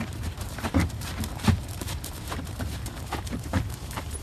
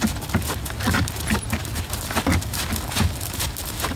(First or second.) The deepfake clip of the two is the first